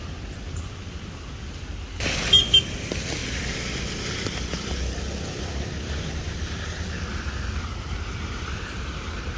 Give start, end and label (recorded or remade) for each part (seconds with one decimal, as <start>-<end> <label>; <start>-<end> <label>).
0.0-9.4 recorded